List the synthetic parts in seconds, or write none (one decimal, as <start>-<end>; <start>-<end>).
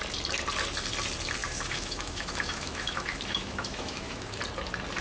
1.4-4.4